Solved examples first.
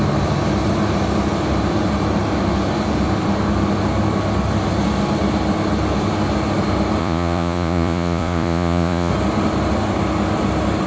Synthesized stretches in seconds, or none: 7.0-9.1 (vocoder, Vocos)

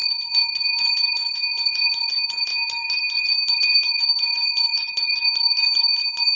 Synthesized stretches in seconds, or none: 2.5-4.0 (vocoder, BigVGAN v2); 4.7-6.4

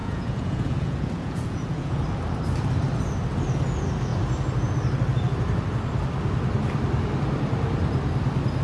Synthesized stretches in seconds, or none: 0.0-2.0 (vocoder, Vocos)

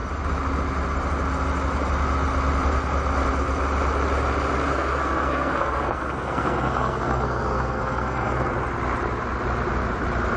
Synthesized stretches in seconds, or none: 4.7-8.5 (codec, SNAC)

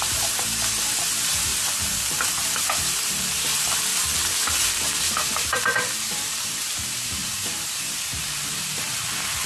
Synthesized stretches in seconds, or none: 0.0-3.9 (vocoder, BigVGAN v2); 5.0-9.5

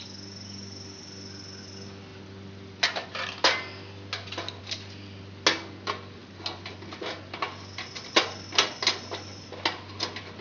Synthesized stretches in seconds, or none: none